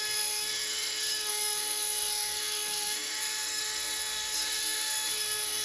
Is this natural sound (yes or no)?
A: no